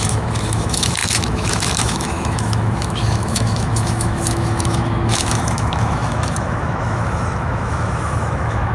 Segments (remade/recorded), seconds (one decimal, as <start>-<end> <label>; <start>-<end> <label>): 0.0-8.7 remade